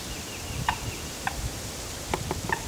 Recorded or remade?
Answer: recorded